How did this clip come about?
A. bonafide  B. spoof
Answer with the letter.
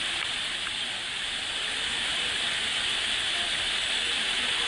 A